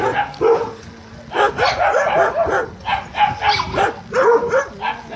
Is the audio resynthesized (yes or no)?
no